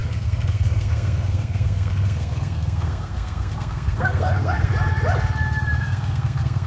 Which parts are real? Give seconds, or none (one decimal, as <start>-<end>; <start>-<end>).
4.7-5.8